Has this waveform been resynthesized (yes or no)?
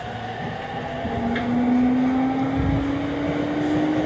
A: no